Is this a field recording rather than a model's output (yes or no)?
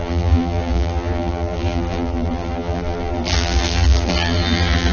no